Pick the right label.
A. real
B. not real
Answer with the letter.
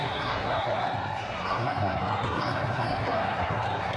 B